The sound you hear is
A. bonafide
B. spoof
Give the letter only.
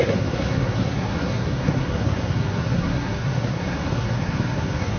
B